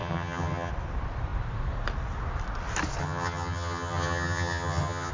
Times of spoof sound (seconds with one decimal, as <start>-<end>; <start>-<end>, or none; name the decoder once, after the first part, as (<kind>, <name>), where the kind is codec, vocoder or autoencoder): 0.0-0.7 (vocoder, HiFi-GAN); 3.0-5.1